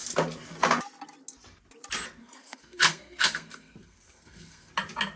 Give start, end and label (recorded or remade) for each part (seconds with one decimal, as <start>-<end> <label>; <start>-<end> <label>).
0.0-2.2 recorded; 2.2-4.7 remade; 4.7-5.2 recorded